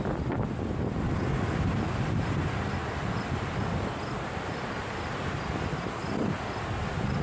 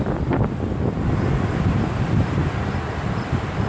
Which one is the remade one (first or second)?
second